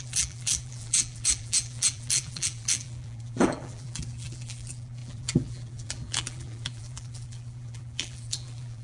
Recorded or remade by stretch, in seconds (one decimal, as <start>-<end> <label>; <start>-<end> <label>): 0.0-8.8 remade